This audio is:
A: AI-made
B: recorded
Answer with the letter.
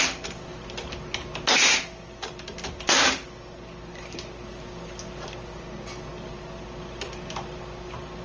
B